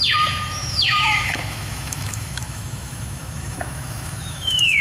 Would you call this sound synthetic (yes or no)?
yes